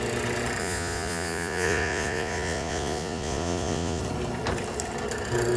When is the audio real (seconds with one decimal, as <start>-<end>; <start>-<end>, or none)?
0.0-0.6; 4.0-5.6